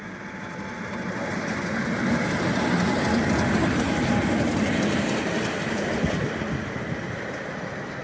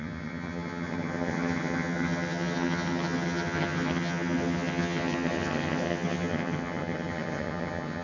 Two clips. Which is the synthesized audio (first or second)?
second